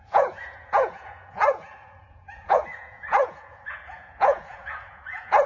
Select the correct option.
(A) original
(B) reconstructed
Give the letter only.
B